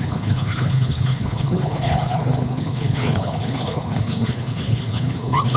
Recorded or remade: remade